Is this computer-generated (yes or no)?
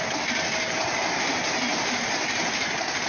no